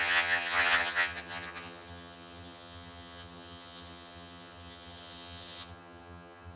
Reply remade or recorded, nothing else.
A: remade